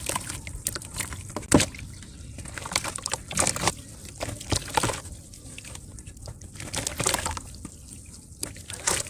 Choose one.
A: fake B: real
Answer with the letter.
B